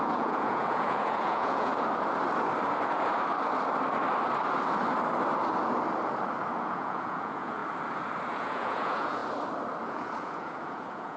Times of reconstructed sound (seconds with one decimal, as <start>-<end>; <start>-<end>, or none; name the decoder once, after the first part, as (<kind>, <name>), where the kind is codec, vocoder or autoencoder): 0.0-1.7 (vocoder, Vocos); 6.6-7.6; 8.3-9.2; 9.9-11.2